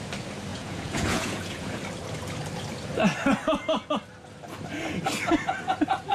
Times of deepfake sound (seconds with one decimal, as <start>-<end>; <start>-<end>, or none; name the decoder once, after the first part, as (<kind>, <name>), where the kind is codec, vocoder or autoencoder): 0.5-1.8 (vocoder, Vocos)

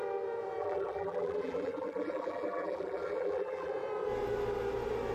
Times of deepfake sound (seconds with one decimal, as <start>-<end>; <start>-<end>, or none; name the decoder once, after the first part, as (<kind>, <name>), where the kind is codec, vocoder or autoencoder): 0.6-3.7 (vocoder, BigVGAN v2)

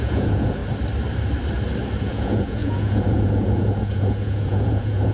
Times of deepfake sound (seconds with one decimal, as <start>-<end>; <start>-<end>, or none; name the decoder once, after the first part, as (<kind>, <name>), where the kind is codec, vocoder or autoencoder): 0.0-0.6 (vocoder, Vocos); 2.0-5.1

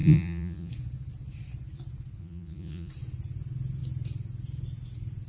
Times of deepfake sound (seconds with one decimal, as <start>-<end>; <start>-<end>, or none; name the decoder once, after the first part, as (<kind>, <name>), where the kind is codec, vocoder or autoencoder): 0.0-0.7 (vocoder, Vocos); 2.2-2.9

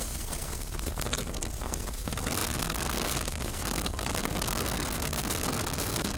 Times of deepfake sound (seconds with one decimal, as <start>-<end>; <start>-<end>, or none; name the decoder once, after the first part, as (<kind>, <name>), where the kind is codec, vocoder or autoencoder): 0.0-6.2 (codec, SNAC)

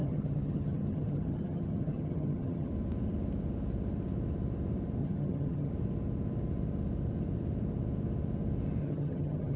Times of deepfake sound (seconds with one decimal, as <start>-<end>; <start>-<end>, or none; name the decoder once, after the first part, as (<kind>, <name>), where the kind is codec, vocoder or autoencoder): 0.0-2.7 (vocoder, HiFi-GAN); 5.0-5.7; 8.8-9.6

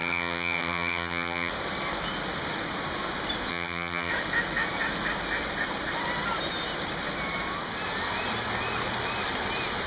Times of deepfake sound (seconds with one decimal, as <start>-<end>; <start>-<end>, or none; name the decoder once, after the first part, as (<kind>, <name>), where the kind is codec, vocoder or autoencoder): 0.0-1.5 (vocoder, HiFi-GAN); 3.5-4.1